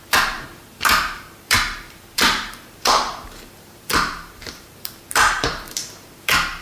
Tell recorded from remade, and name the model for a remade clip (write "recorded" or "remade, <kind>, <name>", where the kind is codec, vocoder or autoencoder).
remade, vocoder, BigVGAN v2